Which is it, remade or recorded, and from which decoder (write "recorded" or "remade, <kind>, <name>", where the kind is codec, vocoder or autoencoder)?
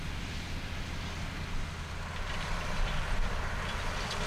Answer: remade, vocoder, BigVGAN v2